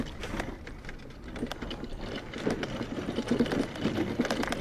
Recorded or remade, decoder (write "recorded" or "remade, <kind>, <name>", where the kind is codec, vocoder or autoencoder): recorded